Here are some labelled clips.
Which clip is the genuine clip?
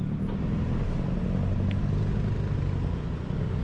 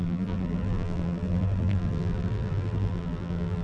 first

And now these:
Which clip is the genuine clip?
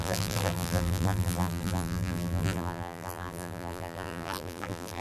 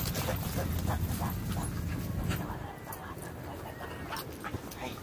second